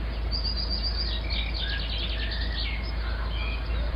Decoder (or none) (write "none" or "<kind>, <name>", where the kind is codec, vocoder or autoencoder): none